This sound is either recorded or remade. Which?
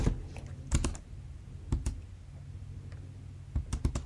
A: recorded